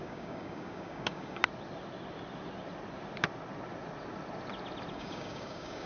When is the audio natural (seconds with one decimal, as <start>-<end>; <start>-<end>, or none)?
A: 1.4-4.9